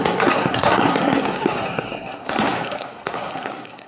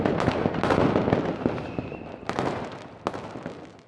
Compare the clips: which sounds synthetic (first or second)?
first